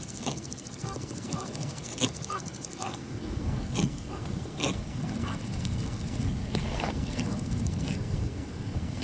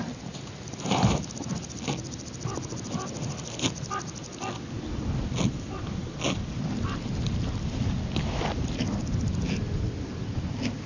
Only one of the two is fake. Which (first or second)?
first